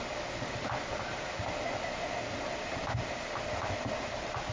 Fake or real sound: real